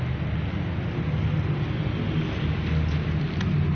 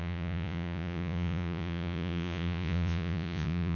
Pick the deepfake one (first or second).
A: second